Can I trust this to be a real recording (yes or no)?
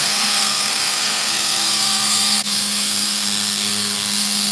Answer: no